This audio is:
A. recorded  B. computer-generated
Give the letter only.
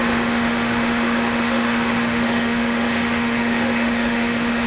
B